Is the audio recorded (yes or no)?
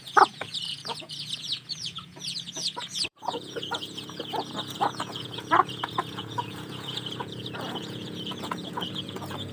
no